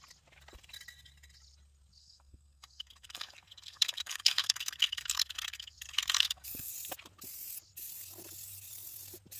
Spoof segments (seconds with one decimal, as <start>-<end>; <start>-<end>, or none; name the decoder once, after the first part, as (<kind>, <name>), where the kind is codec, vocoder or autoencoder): 2.0-6.7 (codec, SNAC)

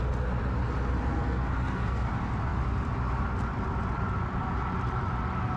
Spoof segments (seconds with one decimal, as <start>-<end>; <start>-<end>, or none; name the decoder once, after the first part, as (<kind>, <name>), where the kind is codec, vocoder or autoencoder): 1.1-2.1 (codec, SNAC)

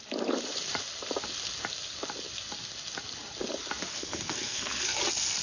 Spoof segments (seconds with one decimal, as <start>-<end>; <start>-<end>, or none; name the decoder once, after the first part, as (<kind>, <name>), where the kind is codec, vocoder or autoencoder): 3.9-5.0 (codec, SNAC)